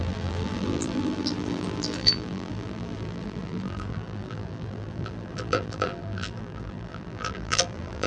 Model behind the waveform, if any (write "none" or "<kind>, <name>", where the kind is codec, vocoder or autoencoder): vocoder, BigVGAN v2